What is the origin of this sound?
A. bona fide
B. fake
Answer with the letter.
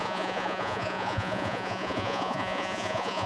B